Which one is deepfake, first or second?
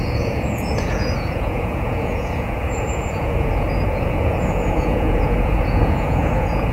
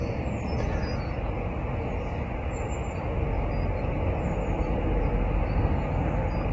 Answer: first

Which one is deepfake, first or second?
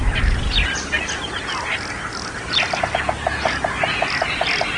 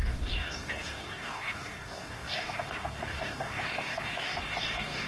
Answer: second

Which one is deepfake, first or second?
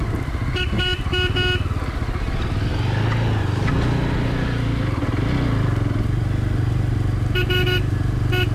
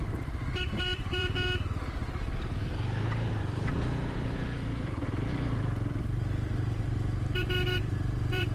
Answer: second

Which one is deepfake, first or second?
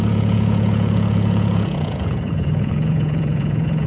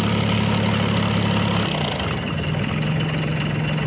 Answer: first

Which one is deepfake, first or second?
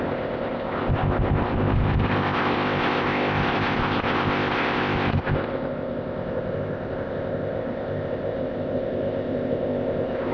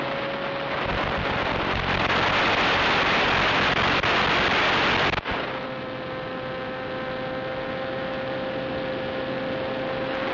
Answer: first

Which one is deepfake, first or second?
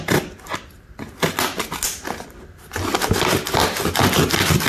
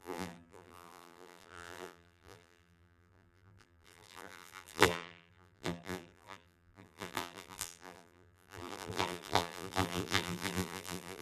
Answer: second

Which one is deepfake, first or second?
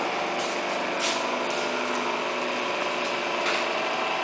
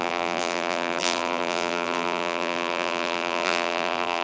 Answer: second